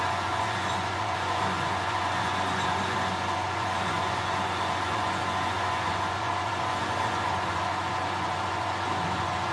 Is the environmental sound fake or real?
fake